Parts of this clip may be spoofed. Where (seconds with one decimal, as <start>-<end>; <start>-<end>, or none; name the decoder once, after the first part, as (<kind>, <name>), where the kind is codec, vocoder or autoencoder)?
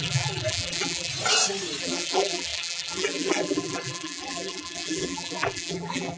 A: 0.0-1.1 (vocoder, BigVGAN v2); 1.8-6.2